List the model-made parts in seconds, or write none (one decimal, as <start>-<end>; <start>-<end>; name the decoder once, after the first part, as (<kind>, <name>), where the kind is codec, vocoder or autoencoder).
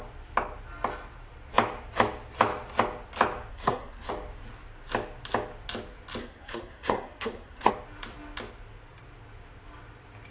3.5-4.1 (codec, SNAC); 6.2-7.7